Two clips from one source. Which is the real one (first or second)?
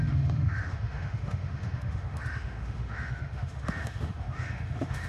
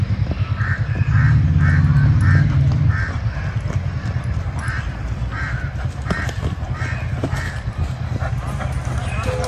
second